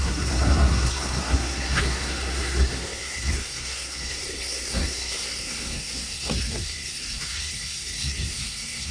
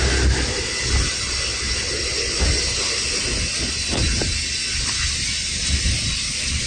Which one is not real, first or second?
first